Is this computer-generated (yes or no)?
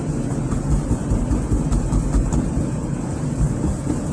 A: no